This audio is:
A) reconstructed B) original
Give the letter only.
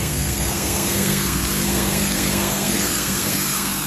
A